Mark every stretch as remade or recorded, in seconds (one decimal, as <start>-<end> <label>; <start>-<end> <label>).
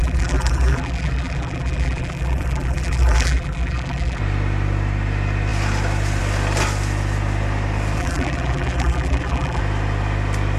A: 0.0-4.2 remade; 4.2-8.0 recorded; 8.0-9.6 remade; 9.6-10.6 recorded